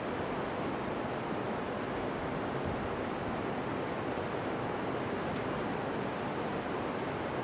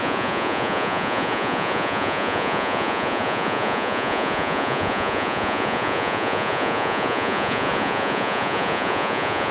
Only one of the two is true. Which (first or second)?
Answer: first